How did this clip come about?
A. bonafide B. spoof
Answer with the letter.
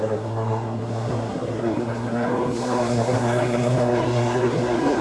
B